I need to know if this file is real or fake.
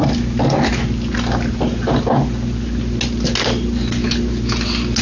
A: real